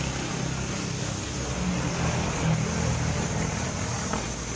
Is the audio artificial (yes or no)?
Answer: no